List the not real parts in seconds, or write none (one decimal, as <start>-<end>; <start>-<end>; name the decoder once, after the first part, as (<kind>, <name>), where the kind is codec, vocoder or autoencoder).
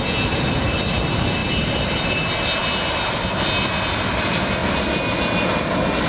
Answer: 0.0-4.6 (vocoder, BigVGAN v2)